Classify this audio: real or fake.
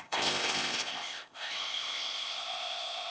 fake